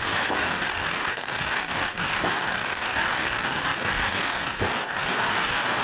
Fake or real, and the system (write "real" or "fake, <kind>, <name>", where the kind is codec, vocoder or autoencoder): fake, codec, DAC